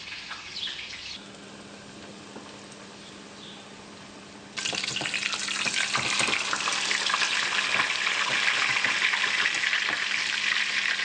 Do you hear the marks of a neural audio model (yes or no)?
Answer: no